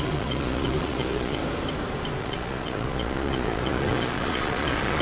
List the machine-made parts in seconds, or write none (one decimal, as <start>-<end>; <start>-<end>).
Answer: 0.0-1.4; 2.2-5.0